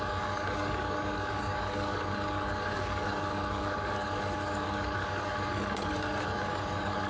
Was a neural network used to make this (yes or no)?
yes